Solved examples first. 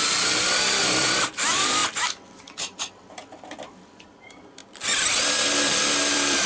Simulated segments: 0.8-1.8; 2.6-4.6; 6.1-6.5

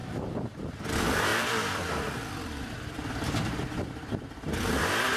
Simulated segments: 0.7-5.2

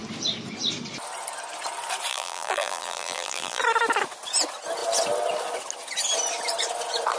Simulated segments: 2.1-3.6